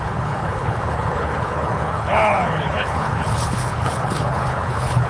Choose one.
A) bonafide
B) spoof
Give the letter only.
B